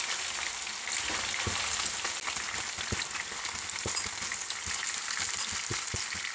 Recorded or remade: recorded